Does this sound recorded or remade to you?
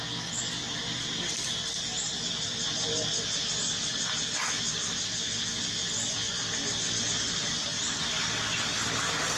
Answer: recorded